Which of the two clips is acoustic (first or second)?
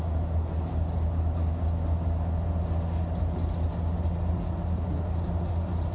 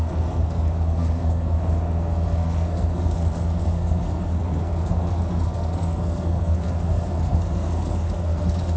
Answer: first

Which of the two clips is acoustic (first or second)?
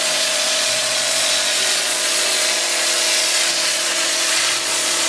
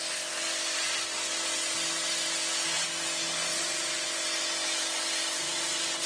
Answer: second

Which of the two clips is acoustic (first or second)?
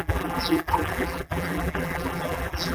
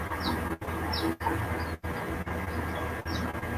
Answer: second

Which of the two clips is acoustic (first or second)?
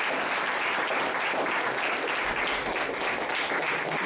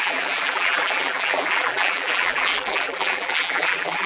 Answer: first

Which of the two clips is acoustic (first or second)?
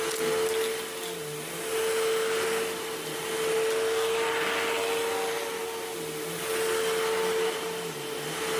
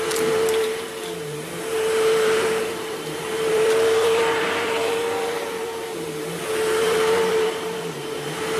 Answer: first